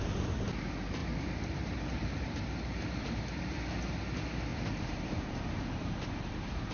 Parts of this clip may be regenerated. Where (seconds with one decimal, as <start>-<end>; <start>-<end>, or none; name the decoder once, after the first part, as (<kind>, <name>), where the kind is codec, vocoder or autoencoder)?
1.0-3.6 (vocoder, BigVGAN v2); 4.5-5.9